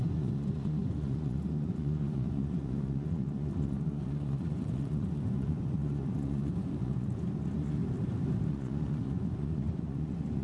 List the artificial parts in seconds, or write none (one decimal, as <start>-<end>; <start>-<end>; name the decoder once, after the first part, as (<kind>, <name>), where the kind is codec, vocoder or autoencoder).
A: 0.0-7.8 (vocoder, Vocos); 8.5-10.4